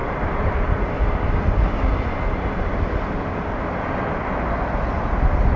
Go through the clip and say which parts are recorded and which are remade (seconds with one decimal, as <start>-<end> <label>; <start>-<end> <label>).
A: 0.0-0.5 remade; 0.5-5.6 recorded

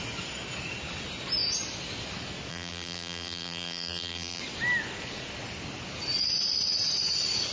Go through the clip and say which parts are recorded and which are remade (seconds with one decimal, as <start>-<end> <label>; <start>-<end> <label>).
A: 0.0-2.5 recorded; 2.5-4.4 remade; 4.4-7.5 recorded

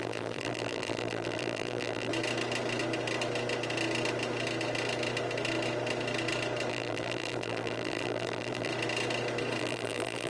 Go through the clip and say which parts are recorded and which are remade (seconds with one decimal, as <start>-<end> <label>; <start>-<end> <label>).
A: 0.0-2.1 remade; 2.1-6.7 recorded; 6.7-8.7 remade; 8.7-9.6 recorded; 9.6-10.3 remade

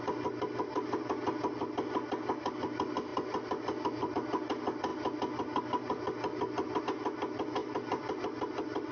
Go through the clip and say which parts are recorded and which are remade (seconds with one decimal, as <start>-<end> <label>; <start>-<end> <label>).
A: 0.0-7.6 recorded; 7.6-8.2 remade; 8.2-8.9 recorded

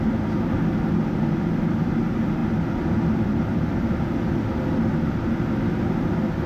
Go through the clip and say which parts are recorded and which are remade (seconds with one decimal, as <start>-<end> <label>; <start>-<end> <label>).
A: 0.0-6.5 recorded

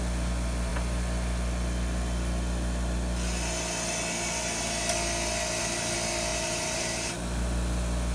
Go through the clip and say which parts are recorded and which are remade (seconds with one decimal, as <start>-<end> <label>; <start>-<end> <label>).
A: 0.0-6.3 recorded; 6.3-7.1 remade; 7.1-8.1 recorded

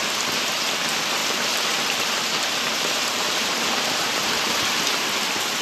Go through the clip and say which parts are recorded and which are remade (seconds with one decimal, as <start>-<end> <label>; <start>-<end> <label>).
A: 0.0-1.2 recorded; 1.2-4.6 remade; 4.6-5.6 recorded

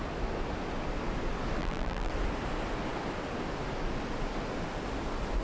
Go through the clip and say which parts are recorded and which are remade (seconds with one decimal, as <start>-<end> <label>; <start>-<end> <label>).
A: 0.0-1.6 recorded; 1.6-2.1 remade; 2.1-5.4 recorded